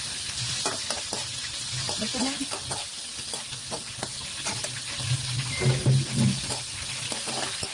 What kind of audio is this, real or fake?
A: real